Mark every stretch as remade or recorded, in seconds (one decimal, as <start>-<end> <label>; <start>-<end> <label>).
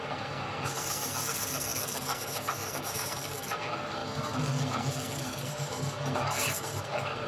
0.0-7.3 remade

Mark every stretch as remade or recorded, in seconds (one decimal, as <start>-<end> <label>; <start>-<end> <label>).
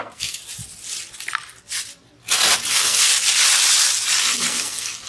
0.0-0.4 remade; 0.4-2.7 recorded; 2.7-3.1 remade; 3.1-4.2 recorded; 4.2-5.1 remade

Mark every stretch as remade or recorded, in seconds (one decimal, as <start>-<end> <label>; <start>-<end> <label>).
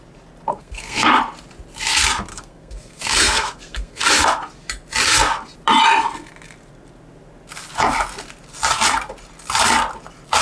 0.0-0.5 recorded; 0.5-1.1 remade; 1.1-2.3 recorded; 2.3-4.1 remade; 4.1-10.4 recorded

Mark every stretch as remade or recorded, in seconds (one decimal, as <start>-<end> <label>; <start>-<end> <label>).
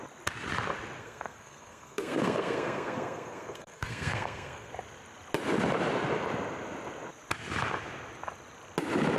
0.0-1.0 recorded; 1.0-4.7 remade; 4.7-9.2 recorded